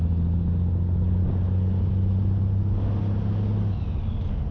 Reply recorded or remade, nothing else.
recorded